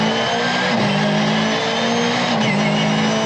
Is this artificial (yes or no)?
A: no